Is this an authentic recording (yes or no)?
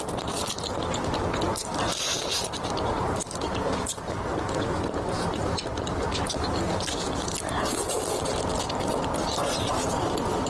yes